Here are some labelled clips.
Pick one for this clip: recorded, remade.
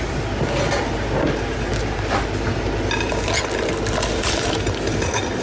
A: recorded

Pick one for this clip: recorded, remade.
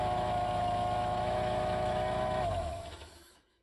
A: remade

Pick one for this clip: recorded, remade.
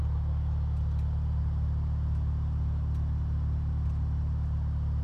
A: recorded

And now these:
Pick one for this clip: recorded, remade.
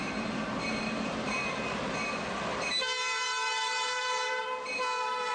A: remade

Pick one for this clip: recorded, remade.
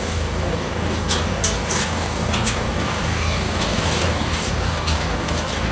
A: remade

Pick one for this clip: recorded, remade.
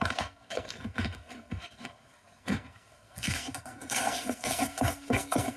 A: remade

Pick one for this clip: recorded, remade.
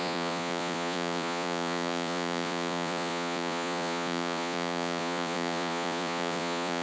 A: remade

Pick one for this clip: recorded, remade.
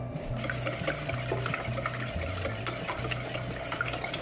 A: recorded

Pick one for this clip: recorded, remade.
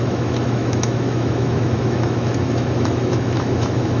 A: remade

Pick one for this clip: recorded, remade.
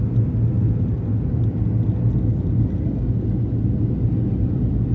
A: recorded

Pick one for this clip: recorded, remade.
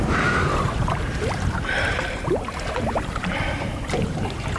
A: remade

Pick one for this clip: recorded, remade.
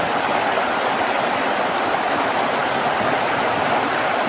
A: recorded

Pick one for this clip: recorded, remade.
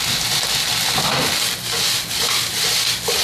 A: recorded